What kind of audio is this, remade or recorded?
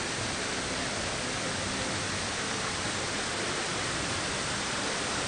recorded